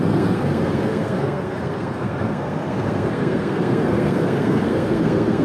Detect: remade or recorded remade